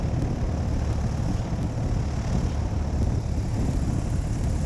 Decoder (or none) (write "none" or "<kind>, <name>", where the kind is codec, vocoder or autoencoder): none